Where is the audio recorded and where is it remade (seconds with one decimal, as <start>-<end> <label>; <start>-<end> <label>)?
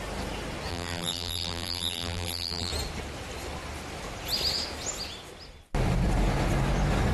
0.0-0.7 recorded; 0.7-2.7 remade; 2.7-7.1 recorded